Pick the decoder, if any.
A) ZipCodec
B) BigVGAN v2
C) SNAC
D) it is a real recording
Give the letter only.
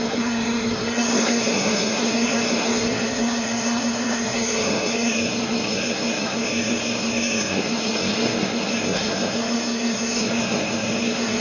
C